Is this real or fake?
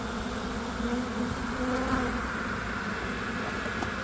real